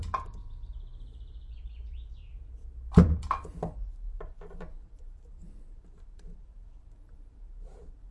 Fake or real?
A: fake